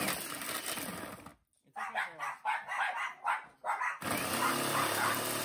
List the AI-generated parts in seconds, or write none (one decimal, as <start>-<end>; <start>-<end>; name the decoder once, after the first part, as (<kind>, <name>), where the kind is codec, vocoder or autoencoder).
none